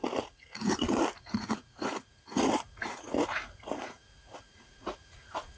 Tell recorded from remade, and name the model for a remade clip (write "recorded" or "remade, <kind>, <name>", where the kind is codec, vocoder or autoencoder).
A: remade, vocoder, Vocos